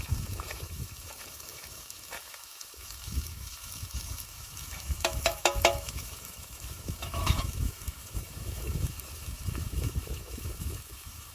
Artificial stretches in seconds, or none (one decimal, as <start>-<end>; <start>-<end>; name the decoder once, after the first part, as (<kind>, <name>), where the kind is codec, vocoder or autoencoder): 0.0-11.3 (autoencoder, DAC-VAE)

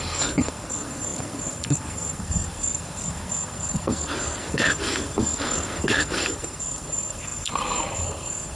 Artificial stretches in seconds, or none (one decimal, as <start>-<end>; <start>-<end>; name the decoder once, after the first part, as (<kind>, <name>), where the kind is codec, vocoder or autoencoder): 0.0-8.6 (codec, SNAC)

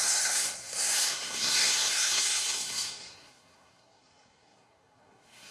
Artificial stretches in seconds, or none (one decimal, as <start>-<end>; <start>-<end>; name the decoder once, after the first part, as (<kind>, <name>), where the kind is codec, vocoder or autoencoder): 0.0-5.5 (codec, SNAC)

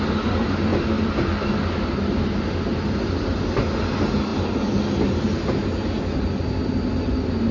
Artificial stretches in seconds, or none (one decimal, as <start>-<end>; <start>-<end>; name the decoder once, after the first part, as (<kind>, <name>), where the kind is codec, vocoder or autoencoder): none

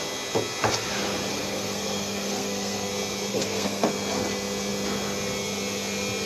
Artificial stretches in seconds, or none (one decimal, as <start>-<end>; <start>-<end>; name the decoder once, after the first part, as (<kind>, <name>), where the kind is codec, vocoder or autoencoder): 1.3-2.9 (codec, SNAC); 3.3-3.9

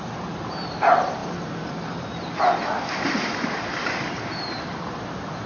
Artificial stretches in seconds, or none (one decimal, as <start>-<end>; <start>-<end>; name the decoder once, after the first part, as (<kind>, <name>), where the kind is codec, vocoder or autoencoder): 0.0-5.5 (vocoder, BigVGAN v2)

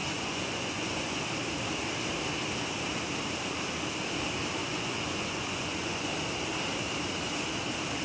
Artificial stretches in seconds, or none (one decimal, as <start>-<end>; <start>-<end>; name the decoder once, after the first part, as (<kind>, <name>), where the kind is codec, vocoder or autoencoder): 0.0-1.2 (vocoder, Vocos); 4.6-6.1